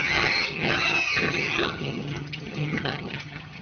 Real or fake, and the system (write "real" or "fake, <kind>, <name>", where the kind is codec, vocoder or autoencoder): fake, vocoder, HiFi-GAN